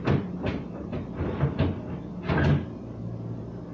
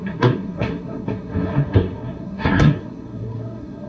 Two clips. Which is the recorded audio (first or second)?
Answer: first